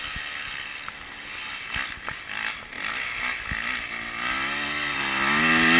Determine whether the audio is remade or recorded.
recorded